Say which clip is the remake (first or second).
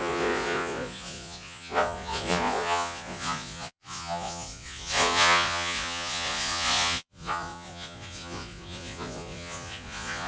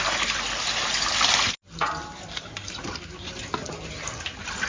first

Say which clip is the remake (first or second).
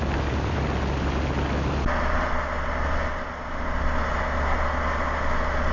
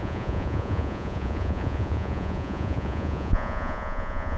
second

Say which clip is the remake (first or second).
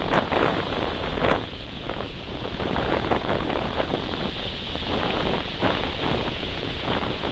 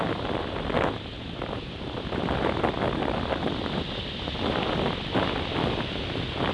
first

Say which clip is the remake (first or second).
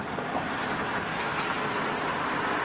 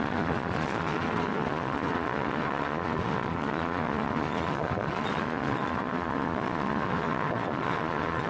second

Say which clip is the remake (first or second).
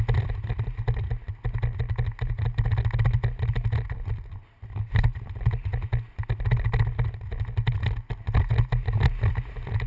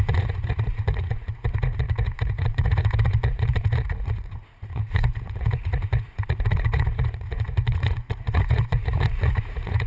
second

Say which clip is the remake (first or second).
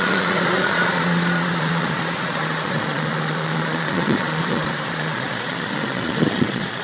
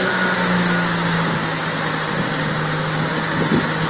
first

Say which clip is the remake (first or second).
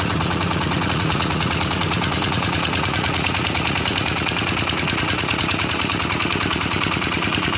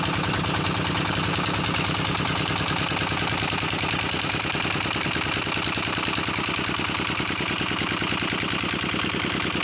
first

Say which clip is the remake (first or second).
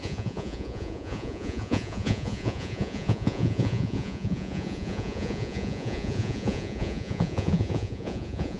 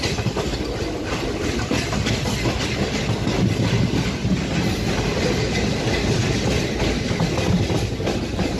first